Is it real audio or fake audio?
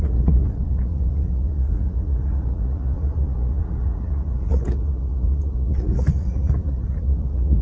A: fake